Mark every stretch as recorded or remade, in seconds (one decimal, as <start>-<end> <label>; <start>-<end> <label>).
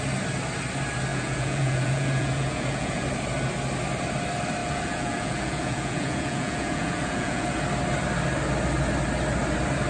0.0-1.1 recorded; 1.1-3.0 remade; 3.0-4.6 recorded; 4.6-7.6 remade; 7.6-9.9 recorded